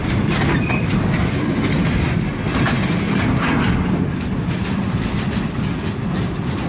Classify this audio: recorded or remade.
recorded